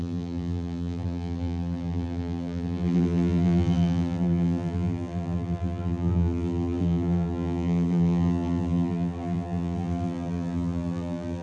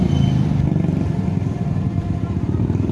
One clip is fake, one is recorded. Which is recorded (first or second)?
second